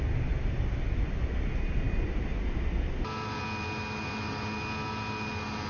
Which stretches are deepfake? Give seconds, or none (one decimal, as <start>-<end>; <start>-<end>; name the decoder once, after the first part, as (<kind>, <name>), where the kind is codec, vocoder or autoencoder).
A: none